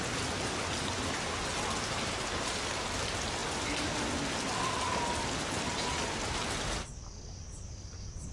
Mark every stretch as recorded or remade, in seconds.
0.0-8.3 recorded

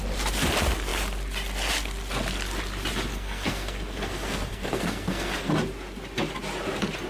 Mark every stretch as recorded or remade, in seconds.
0.0-3.1 recorded; 3.1-5.5 remade; 5.5-7.1 recorded